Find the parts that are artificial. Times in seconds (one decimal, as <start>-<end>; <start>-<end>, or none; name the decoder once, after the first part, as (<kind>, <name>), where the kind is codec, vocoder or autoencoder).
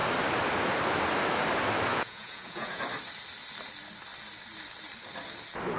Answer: 1.9-2.8 (vocoder, Vocos)